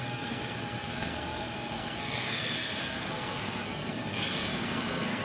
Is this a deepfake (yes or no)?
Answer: yes